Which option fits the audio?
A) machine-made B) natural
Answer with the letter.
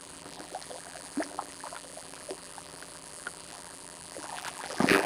A